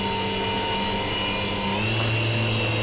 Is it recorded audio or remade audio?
recorded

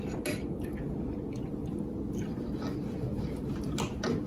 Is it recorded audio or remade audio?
recorded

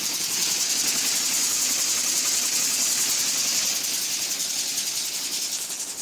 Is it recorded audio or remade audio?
recorded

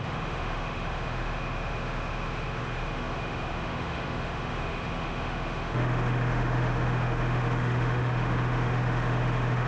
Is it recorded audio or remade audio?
remade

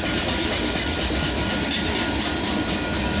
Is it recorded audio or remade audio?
recorded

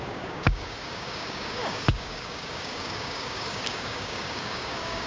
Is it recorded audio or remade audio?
remade